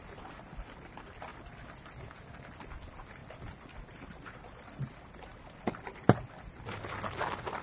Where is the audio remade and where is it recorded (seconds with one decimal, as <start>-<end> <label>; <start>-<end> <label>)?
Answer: 0.0-1.3 remade; 1.3-2.7 recorded; 2.7-7.6 remade